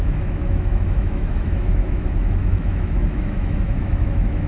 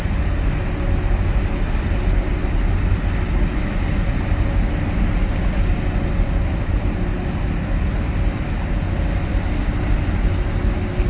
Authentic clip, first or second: second